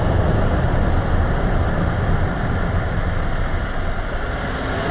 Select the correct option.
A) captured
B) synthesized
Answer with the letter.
A